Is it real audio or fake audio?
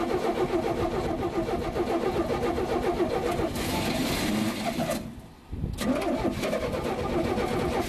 real